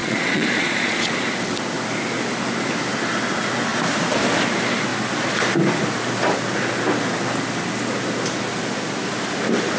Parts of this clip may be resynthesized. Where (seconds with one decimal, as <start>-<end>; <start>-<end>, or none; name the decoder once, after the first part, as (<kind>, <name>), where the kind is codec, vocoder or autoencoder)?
0.0-1.1 (vocoder, Vocos)